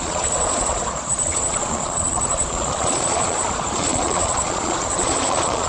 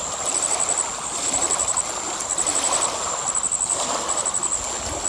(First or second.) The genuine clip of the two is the second